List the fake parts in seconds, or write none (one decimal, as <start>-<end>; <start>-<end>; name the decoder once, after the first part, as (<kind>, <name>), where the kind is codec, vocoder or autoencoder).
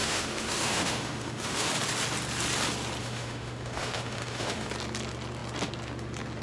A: 0.0-1.7 (autoencoder, DAC-VAE); 3.0-4.7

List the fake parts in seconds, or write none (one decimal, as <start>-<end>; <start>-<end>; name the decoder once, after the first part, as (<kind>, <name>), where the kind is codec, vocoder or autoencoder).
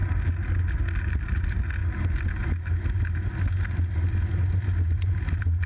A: none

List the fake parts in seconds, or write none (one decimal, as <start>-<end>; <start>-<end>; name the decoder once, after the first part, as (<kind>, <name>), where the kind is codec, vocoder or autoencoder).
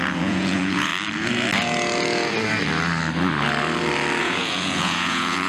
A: 0.0-0.9 (vocoder, Vocos); 4.2-5.5